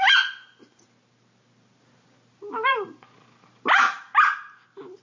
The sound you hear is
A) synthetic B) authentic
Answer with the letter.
B